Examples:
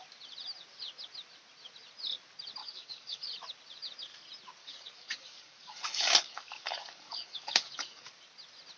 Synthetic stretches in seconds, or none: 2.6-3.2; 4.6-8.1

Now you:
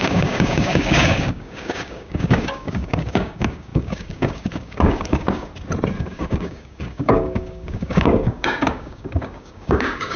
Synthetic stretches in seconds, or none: 0.0-5.5; 6.0-10.2

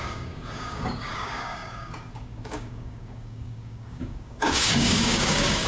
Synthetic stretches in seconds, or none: 0.0-5.7

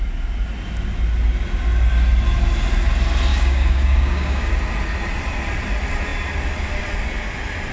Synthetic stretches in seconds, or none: 3.3-4.5

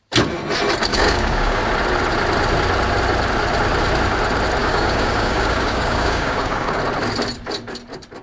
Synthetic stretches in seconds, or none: 0.9-1.6; 4.6-6.8

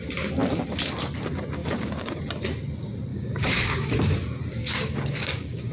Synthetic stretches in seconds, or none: 1.6-2.2; 3.1-4.0; 4.6-5.7

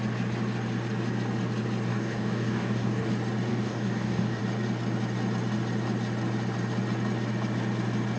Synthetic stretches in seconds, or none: 1.9-3.1; 3.5-4.4